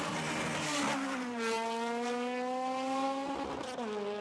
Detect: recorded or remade recorded